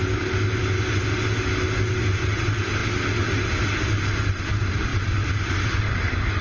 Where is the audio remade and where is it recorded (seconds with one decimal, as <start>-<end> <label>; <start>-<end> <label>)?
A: 0.0-6.4 recorded